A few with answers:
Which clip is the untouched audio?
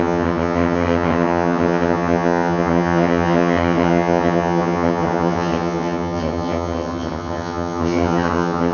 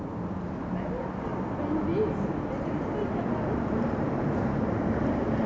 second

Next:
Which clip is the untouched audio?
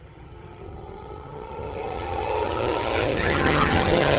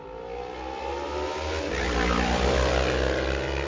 second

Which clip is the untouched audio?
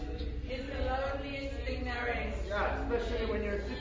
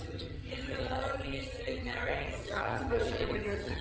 first